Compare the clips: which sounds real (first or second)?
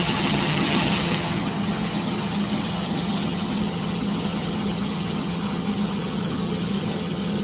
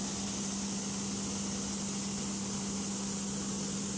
second